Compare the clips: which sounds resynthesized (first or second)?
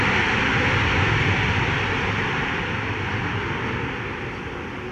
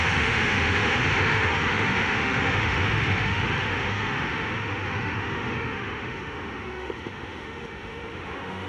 second